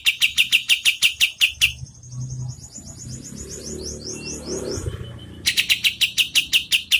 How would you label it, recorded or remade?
recorded